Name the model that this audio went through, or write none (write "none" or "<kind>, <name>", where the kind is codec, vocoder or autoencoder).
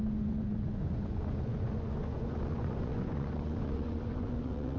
vocoder, Vocos